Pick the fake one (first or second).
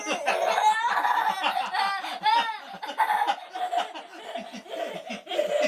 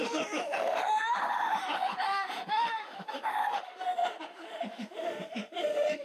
second